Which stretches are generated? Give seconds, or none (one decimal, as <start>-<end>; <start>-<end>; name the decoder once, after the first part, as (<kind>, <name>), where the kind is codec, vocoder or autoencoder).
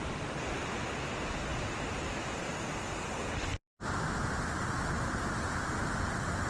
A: none